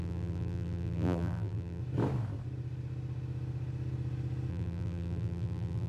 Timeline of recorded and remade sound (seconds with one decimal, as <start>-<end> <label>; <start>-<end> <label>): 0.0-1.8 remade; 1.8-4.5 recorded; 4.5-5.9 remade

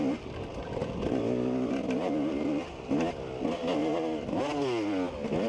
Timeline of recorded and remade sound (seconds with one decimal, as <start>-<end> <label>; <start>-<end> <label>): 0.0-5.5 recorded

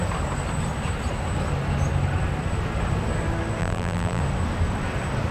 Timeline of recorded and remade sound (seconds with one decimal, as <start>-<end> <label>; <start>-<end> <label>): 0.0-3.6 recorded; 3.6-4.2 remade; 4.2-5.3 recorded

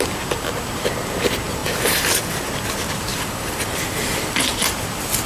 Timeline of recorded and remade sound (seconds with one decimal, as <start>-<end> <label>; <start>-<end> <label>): 0.0-1.6 recorded; 1.6-2.4 remade; 2.4-3.1 recorded; 3.1-4.7 remade; 4.7-5.3 recorded

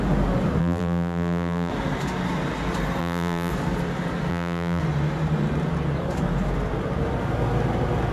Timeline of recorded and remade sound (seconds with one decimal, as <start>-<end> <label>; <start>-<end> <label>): 0.0-0.6 recorded; 0.6-1.7 remade; 1.7-3.0 recorded; 3.0-3.5 remade; 3.5-4.3 recorded; 4.3-4.8 remade; 4.8-8.1 recorded